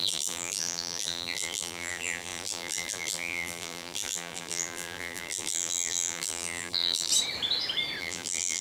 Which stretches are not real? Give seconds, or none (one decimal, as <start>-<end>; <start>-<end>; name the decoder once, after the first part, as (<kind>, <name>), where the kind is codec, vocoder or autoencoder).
0.0-7.1 (vocoder, BigVGAN v2); 8.0-8.6